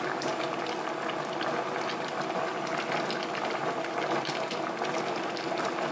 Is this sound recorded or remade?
recorded